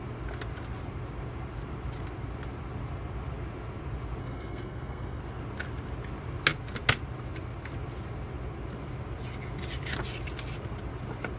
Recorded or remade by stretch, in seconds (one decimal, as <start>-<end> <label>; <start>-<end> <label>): 0.0-4.2 recorded; 4.2-5.2 remade; 5.2-11.4 recorded